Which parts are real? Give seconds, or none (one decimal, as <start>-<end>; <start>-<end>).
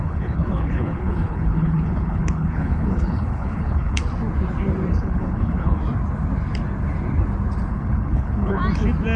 4.0-4.9; 5.8-7.7; 8.6-9.2